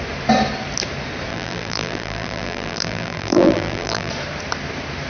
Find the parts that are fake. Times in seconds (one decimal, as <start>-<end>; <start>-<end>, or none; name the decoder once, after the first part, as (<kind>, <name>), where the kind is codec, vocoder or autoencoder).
1.3-4.1 (vocoder, BigVGAN v2)